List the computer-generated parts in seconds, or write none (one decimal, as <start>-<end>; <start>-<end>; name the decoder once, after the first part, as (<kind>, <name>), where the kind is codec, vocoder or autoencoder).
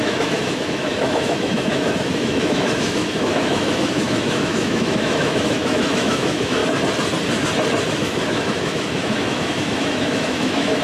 0.0-6.6 (autoencoder, DAC-VAE); 7.9-10.8